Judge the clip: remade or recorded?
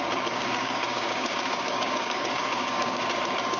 remade